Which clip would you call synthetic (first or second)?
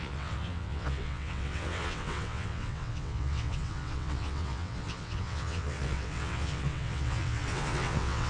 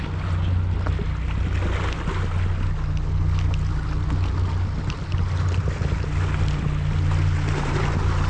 first